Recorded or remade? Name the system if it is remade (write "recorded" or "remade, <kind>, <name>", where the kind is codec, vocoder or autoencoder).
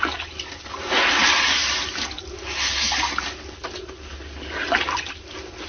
recorded